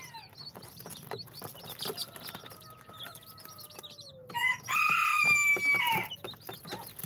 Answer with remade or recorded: recorded